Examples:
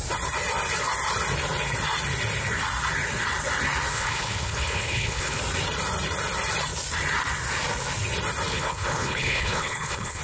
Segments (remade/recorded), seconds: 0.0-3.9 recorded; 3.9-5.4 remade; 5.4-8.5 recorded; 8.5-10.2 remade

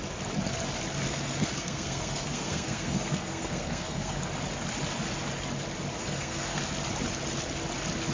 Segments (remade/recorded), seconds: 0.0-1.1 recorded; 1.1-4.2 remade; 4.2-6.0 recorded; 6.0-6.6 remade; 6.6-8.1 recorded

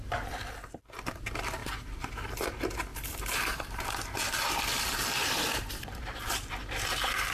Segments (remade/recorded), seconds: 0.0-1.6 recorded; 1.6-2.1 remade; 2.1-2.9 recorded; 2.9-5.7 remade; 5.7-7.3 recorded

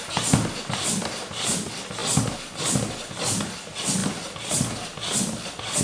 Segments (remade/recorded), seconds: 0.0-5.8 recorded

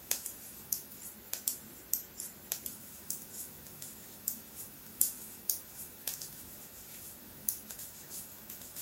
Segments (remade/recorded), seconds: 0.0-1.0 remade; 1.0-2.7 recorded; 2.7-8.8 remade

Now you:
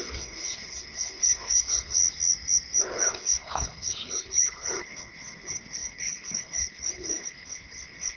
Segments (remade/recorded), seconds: 0.0-2.0 remade; 2.0-2.8 recorded; 2.8-8.2 remade

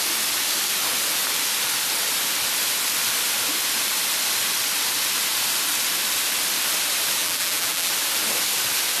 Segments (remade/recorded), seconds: 0.0-7.2 recorded; 7.2-7.9 remade; 7.9-9.0 recorded